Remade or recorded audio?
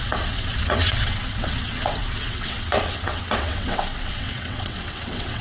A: remade